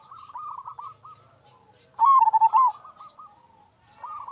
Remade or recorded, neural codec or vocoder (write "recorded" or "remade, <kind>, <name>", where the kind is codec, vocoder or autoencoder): recorded